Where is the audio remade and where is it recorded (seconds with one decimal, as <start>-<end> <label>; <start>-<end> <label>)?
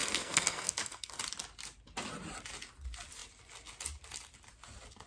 0.0-1.2 remade; 1.2-5.1 recorded